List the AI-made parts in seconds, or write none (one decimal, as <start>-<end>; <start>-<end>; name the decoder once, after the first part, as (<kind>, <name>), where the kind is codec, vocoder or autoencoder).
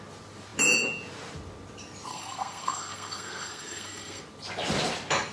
2.1-4.2 (codec, SNAC)